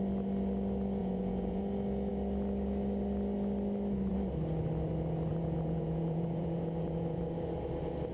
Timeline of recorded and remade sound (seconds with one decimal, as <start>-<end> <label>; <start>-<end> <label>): 0.0-1.0 recorded; 1.0-1.6 remade; 1.6-5.3 recorded; 5.3-7.2 remade; 7.2-8.1 recorded